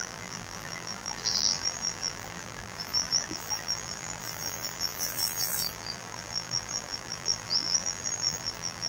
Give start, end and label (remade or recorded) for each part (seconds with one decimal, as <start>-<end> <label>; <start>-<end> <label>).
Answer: 0.0-8.9 remade